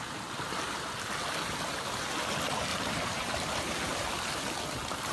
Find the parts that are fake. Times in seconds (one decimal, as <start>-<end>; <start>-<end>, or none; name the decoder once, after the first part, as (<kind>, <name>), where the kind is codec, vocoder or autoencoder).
2.7-4.1 (vocoder, BigVGAN v2)